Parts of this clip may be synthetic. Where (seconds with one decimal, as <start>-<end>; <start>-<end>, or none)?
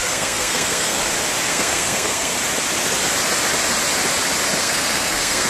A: 0.0-1.0; 1.5-2.3; 4.6-5.5